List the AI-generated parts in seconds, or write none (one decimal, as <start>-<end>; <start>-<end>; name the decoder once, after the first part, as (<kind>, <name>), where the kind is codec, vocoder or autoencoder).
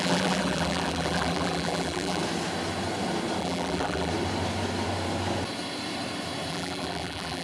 0.0-2.2 (vocoder, BigVGAN v2); 3.4-4.1; 6.5-7.4